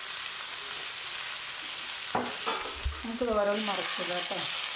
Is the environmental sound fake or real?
real